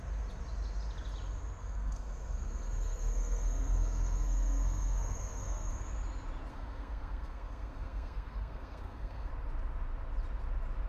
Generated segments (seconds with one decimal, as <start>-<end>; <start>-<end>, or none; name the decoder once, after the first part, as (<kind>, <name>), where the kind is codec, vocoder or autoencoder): 1.6-5.7 (codec, SNAC); 6.5-9.3